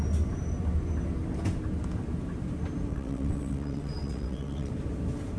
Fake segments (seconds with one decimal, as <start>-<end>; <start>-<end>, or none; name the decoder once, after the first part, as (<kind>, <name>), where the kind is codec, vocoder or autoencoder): 2.9-4.7 (vocoder, WaveNeXt)